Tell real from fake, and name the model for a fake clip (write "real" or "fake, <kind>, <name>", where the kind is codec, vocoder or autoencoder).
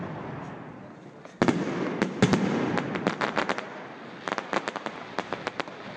real